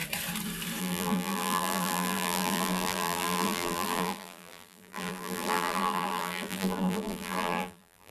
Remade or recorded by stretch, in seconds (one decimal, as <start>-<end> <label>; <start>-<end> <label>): 0.0-0.8 recorded; 0.8-8.1 remade